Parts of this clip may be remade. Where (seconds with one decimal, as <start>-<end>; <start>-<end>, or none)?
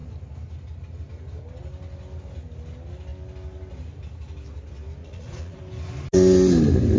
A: 5.0-5.6